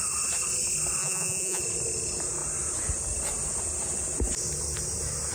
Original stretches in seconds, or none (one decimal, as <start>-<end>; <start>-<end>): 0.0-1.0; 1.6-5.3